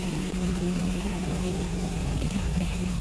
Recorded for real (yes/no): no